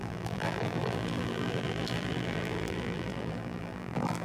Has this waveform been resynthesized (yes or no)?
yes